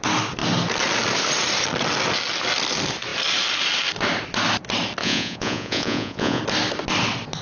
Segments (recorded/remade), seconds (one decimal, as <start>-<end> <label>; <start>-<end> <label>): 0.0-5.0 recorded; 5.0-6.4 remade; 6.4-7.4 recorded